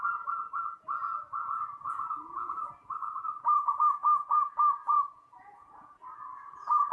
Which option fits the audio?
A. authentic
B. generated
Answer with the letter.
B